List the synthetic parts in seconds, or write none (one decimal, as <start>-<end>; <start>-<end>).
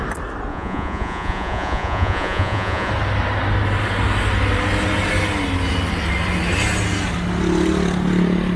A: 0.5-2.9